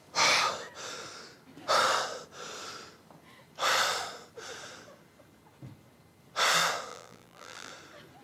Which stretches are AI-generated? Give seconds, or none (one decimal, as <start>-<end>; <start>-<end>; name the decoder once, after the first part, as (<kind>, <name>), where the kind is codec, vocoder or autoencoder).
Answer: 6.9-7.7 (vocoder, BigVGAN v2)